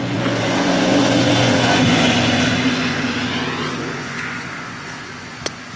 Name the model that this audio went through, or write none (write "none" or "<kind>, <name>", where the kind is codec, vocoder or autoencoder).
vocoder, Vocos